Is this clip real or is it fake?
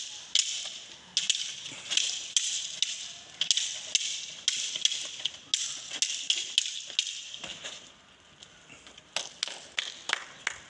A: real